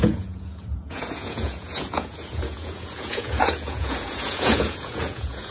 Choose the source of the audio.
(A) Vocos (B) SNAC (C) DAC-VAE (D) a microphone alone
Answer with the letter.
A